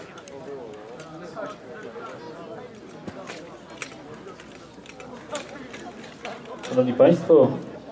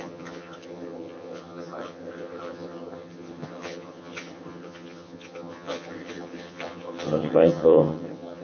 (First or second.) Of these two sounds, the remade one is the second